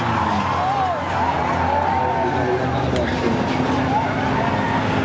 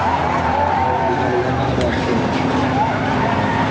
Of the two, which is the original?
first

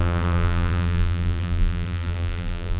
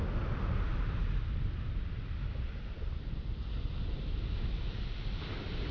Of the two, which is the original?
second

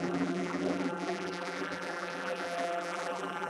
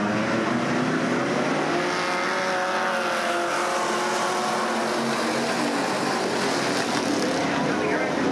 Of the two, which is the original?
second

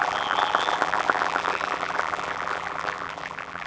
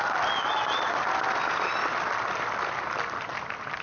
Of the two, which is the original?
second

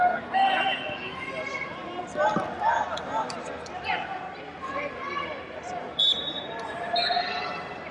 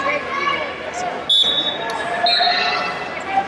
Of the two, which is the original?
second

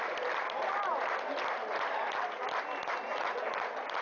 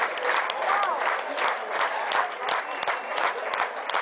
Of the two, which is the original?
first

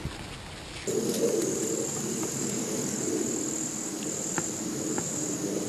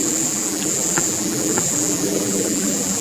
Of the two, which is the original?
first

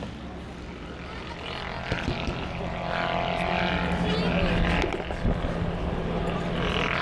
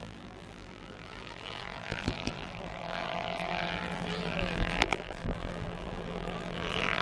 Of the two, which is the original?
first